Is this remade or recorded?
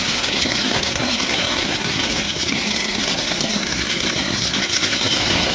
remade